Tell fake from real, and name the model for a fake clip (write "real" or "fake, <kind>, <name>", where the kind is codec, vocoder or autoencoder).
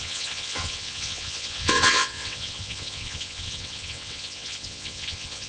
fake, vocoder, WaveNeXt